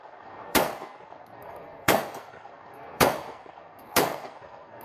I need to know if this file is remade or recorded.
remade